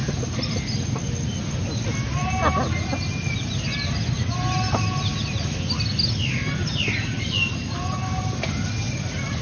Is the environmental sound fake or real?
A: real